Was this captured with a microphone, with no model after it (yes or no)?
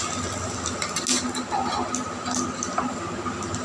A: yes